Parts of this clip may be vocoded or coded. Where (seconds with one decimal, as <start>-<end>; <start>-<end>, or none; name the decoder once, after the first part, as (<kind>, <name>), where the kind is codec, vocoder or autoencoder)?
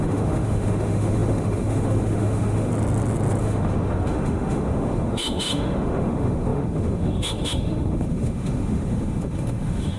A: 0.0-2.7 (autoencoder, DAC-VAE); 3.4-10.0